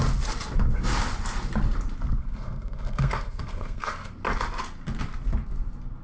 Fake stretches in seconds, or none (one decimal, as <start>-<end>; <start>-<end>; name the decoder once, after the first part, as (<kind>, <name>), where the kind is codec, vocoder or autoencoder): 2.2-4.1 (codec, SNAC)